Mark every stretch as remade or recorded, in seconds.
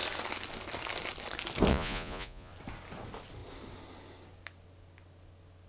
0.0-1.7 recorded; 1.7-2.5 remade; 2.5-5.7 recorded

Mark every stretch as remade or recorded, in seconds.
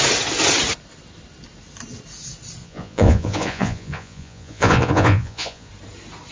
0.0-2.6 recorded; 2.6-5.7 remade; 5.7-6.3 recorded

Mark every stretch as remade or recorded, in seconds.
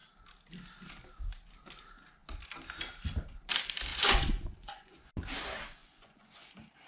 0.0-3.9 recorded; 3.9-5.1 remade; 5.1-5.8 recorded; 5.8-6.5 remade; 6.5-6.9 recorded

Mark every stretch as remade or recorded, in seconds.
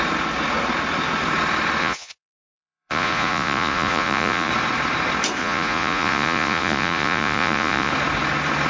0.0-1.8 recorded; 1.8-4.5 remade; 4.5-5.4 recorded; 5.4-7.9 remade; 7.9-8.7 recorded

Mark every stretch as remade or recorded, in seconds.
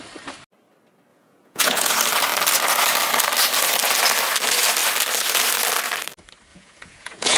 0.0-1.1 recorded; 1.1-1.9 remade; 1.9-6.5 recorded; 6.5-7.4 remade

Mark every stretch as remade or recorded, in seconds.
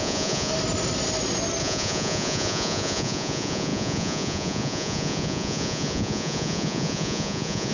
0.0-0.5 remade; 0.5-1.6 recorded; 1.6-7.7 remade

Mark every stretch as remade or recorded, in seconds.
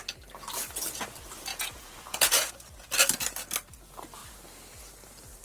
0.0-1.5 recorded; 1.5-2.5 remade; 2.5-5.4 recorded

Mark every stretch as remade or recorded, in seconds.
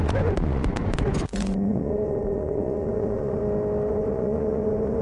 0.0-3.4 remade; 3.4-3.9 recorded; 3.9-5.0 remade